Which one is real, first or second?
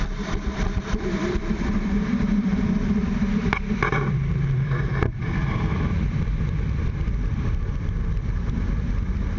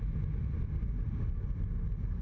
second